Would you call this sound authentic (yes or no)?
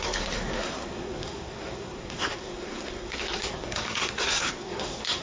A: no